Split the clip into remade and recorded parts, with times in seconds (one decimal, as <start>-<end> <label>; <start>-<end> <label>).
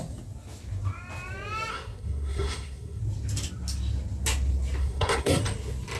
0.0-1.7 recorded; 1.7-3.0 remade; 3.0-4.8 recorded; 4.8-5.4 remade; 5.4-6.0 recorded